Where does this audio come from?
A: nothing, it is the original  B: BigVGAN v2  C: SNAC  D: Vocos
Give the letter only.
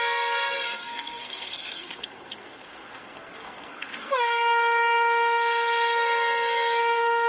C